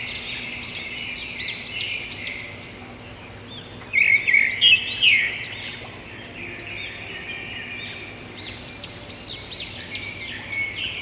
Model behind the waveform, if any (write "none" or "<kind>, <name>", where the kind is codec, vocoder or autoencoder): none